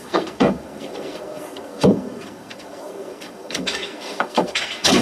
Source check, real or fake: fake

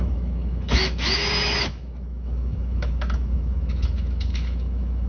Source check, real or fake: fake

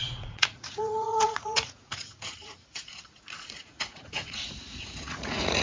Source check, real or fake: fake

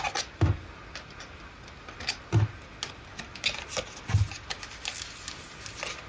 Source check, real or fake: real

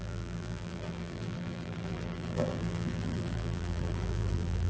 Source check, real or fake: fake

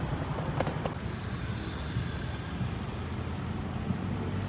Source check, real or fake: real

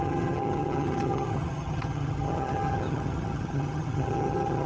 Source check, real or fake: fake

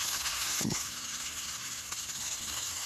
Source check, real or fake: fake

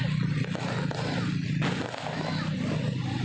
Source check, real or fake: real